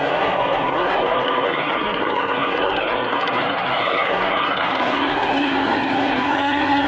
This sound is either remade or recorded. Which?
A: remade